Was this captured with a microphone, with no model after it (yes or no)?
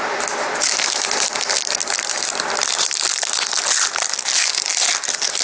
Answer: yes